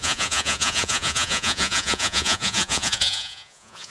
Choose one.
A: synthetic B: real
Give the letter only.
A